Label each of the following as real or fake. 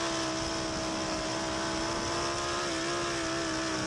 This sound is real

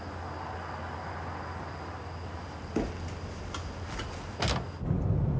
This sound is real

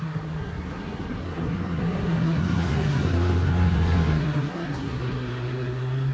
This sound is fake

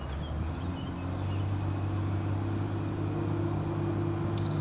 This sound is real